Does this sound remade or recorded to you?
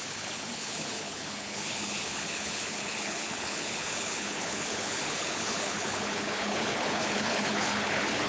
remade